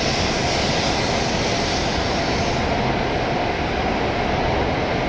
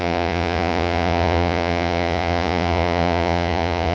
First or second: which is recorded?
first